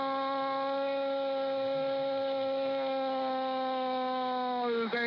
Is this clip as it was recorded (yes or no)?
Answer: yes